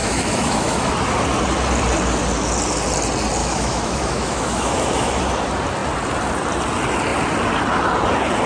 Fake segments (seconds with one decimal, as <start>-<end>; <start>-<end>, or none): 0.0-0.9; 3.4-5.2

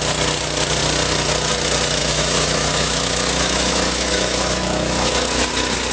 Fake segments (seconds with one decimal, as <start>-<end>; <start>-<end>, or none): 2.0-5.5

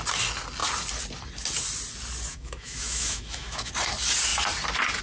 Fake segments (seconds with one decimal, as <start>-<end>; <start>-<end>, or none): 2.3-3.7

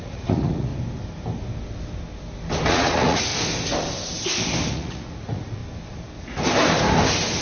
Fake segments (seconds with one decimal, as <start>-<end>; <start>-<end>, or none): 0.0-0.7; 2.7-3.3; 4.7-5.6

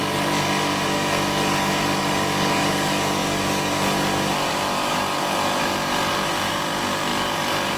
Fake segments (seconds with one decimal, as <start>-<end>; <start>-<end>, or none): 0.0-7.8